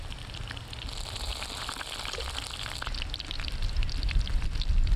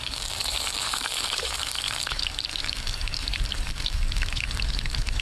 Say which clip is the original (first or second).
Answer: first